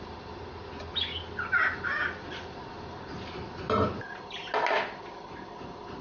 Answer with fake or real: real